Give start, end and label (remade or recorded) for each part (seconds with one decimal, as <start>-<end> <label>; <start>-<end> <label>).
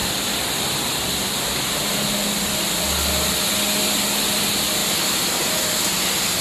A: 0.0-4.8 recorded; 4.8-5.9 remade; 5.9-6.4 recorded